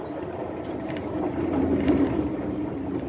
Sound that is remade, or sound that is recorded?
recorded